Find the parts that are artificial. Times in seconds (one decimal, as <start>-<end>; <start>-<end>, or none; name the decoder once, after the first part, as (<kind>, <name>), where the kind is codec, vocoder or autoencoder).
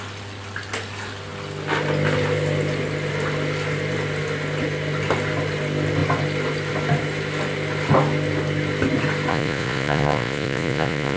9.3-11.2 (vocoder, Vocos)